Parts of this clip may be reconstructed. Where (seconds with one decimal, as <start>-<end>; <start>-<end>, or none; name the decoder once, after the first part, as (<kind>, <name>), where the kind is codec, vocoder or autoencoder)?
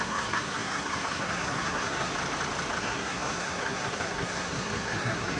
0.0-2.1 (codec, SNAC); 2.8-5.4